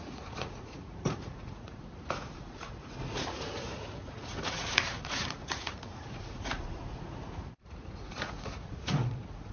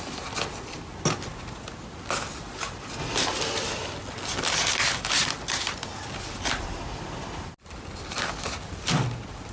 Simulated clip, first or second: first